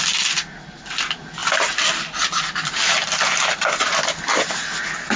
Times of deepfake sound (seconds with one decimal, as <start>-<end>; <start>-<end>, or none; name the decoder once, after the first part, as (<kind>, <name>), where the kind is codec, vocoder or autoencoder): 1.4-4.5 (vocoder, BigVGAN v2)